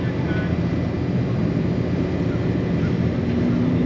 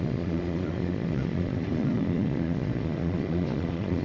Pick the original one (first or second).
first